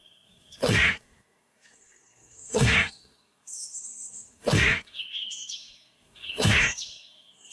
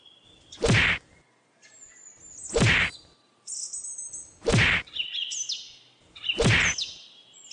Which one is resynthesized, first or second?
first